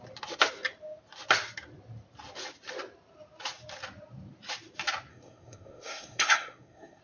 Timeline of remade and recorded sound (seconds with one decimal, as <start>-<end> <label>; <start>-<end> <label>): 0.0-5.1 recorded; 5.1-7.0 remade